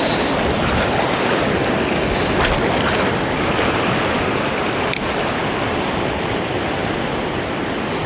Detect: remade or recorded recorded